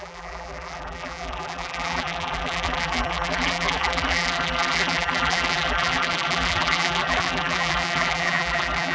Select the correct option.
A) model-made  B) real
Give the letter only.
A